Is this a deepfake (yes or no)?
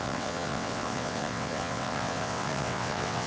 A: yes